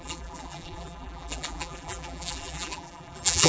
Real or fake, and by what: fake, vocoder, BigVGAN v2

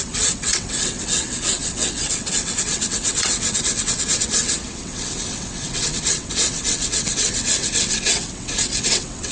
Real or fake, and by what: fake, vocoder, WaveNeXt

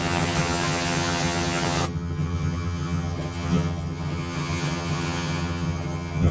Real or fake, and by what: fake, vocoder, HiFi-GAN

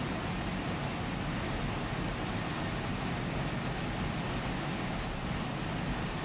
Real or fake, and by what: real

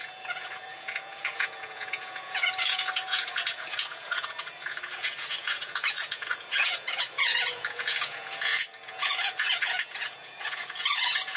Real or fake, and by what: fake, vocoder, Vocos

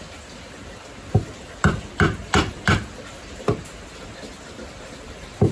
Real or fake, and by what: real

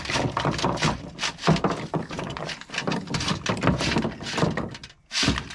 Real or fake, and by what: real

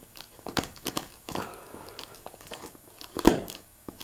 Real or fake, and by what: fake, codec, DAC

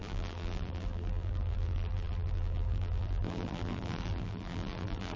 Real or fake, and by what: fake, vocoder, BigVGAN v2